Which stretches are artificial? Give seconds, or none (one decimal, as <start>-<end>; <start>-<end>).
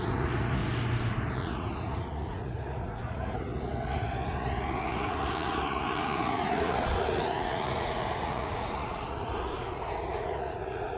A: 0.0-0.6; 1.3-11.0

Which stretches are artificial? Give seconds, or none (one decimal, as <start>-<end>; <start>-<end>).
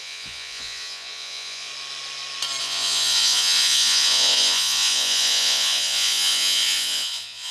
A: 0.0-1.7; 2.6-7.5